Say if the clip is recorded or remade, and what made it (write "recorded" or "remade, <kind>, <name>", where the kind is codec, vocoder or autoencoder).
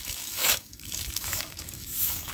remade, codec, DAC